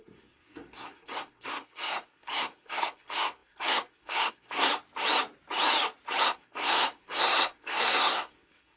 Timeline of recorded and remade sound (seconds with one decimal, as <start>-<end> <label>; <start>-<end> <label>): 0.0-4.7 remade; 4.7-6.2 recorded; 6.2-8.8 remade